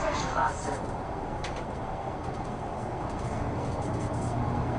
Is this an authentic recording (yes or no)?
no